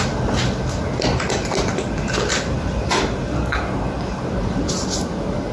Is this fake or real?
real